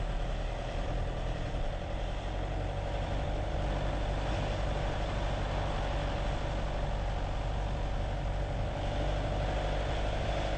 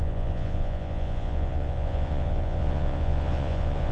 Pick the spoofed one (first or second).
second